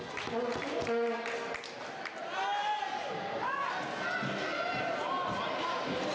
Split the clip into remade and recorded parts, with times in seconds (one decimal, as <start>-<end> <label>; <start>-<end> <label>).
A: 0.0-6.1 recorded